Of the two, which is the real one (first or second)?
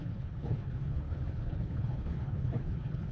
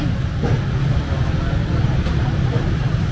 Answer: second